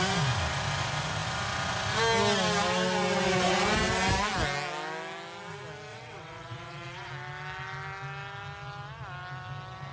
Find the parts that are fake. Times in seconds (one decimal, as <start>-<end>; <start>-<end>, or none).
5.9-7.1